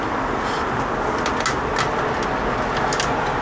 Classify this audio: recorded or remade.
recorded